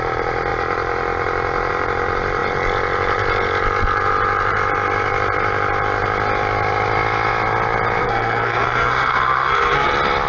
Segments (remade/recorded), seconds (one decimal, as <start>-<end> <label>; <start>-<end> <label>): 0.0-8.0 recorded; 8.0-9.9 remade; 9.9-10.3 recorded